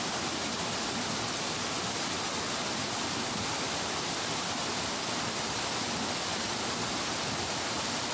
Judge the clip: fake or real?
real